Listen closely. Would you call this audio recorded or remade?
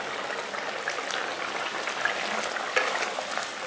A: recorded